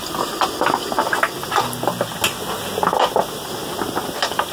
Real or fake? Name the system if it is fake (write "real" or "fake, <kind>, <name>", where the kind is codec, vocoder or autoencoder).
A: real